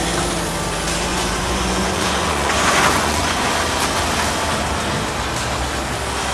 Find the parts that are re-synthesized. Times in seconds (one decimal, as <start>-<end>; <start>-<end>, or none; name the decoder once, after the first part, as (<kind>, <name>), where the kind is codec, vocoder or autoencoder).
1.1-3.5 (vocoder, Vocos)